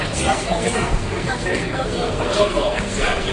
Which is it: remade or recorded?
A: remade